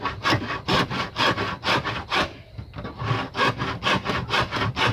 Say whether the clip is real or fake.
real